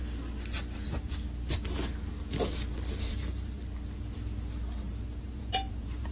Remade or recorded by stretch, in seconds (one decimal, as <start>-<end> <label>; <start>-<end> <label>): 0.0-3.1 recorded; 3.1-3.6 remade; 3.6-5.2 recorded; 5.2-6.1 remade